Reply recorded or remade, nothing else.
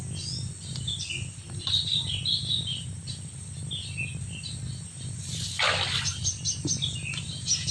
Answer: recorded